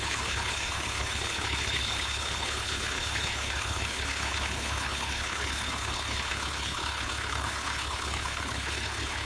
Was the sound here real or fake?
fake